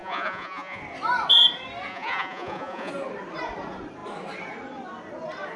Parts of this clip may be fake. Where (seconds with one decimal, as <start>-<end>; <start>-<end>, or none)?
0.0-0.8; 1.9-2.9